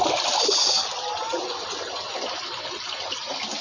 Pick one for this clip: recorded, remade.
recorded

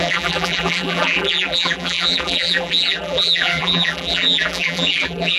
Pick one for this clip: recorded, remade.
remade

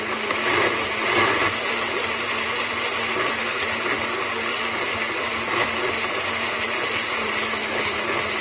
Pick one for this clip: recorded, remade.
recorded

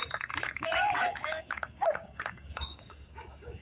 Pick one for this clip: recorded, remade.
remade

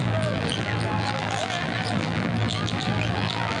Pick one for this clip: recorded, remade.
remade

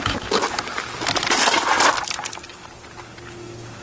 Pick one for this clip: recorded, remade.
recorded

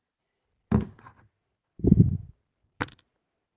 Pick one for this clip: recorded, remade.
recorded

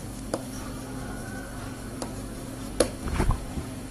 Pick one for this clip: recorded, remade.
remade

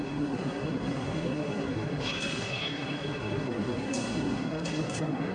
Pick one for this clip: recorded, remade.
remade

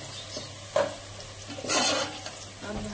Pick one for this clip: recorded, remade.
recorded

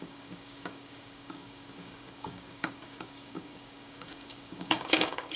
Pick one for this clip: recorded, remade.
remade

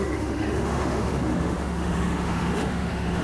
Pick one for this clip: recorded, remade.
remade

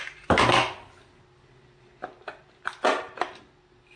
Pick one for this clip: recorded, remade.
recorded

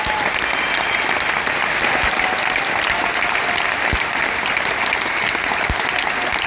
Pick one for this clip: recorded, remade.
recorded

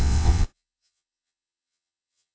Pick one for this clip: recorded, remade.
remade